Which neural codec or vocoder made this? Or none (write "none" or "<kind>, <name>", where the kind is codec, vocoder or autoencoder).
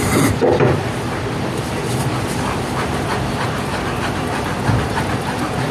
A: vocoder, BigVGAN v2